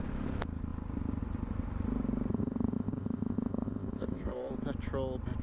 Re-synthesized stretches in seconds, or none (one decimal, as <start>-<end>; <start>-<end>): 2.3-4.5